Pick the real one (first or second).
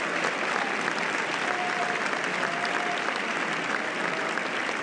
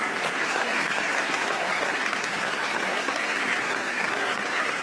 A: first